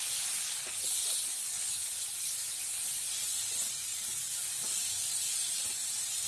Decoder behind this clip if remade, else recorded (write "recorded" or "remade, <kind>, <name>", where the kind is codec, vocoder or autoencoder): recorded